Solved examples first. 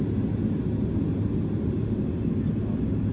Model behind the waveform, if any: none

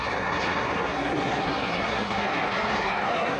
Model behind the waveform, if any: codec, SNAC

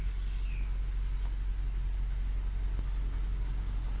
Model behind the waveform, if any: none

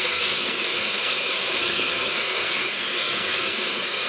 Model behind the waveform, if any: codec, SNAC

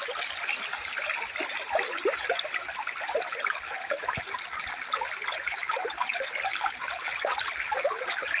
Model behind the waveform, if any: none